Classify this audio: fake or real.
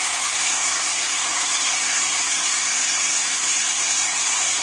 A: fake